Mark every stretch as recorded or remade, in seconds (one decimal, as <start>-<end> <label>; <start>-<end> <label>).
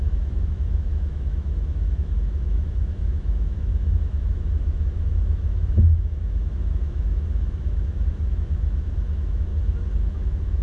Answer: 0.0-9.5 remade; 9.5-10.1 recorded; 10.1-10.6 remade